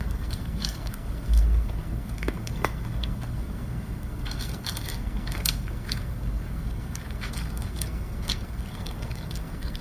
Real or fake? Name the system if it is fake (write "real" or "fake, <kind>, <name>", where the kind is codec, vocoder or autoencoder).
fake, codec, SNAC